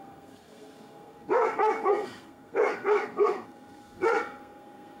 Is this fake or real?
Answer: fake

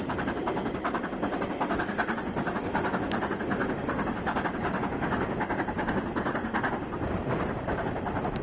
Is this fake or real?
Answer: real